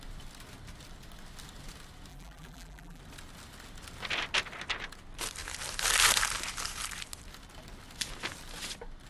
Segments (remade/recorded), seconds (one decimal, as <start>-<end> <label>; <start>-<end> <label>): 0.0-2.1 recorded; 2.1-3.0 remade; 3.0-9.1 recorded